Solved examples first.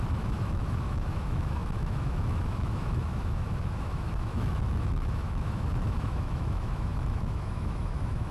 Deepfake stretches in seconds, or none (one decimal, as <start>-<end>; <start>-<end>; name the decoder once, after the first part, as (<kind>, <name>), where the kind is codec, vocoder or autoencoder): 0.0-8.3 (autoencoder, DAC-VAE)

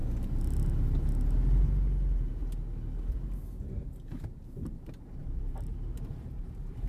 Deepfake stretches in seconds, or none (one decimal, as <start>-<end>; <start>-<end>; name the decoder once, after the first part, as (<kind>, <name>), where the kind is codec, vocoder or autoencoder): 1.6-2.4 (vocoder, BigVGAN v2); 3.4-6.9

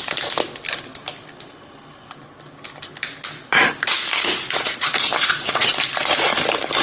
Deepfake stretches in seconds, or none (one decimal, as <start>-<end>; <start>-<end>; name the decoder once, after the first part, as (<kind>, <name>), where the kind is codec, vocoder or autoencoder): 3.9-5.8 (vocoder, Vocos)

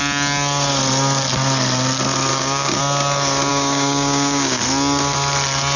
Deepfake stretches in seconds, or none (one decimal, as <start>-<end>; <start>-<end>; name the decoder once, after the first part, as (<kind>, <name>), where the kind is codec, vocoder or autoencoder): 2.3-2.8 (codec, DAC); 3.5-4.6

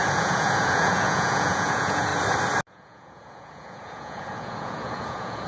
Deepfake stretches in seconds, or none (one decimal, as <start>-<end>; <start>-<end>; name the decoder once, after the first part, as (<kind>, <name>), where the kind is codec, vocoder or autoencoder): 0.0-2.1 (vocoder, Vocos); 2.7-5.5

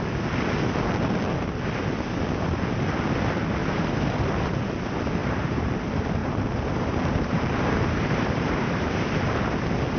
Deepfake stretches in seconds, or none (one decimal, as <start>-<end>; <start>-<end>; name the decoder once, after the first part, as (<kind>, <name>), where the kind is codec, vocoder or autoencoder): 3.6-4.6 (vocoder, BigVGAN v2); 5.2-5.7; 6.2-9.3

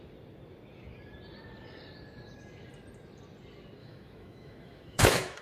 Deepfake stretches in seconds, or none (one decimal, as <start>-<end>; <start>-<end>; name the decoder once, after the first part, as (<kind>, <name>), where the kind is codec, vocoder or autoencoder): 3.8-5.4 (autoencoder, DAC-VAE)

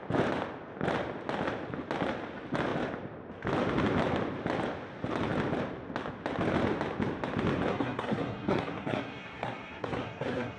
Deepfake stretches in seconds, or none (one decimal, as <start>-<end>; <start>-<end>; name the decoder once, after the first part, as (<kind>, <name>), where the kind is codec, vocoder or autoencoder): 7.7-10.6 (codec, SNAC)